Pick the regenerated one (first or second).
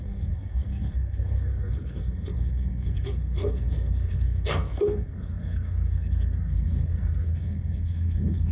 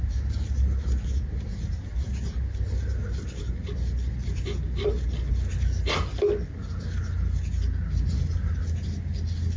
first